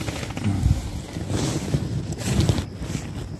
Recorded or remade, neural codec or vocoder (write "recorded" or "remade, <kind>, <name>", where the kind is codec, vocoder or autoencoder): recorded